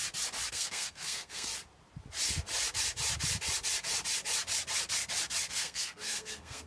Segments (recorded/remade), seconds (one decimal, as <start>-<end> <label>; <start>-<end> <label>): 0.0-0.5 recorded; 0.5-1.5 remade; 1.5-5.5 recorded; 5.5-6.7 remade

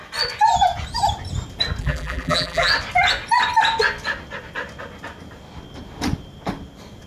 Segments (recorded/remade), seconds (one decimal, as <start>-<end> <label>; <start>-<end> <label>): 0.0-1.8 recorded; 1.8-2.7 remade; 2.7-7.1 recorded